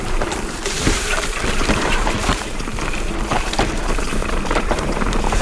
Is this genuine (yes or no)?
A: no